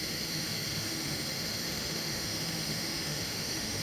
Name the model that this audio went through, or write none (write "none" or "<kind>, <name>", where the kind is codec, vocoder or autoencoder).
autoencoder, DAC-VAE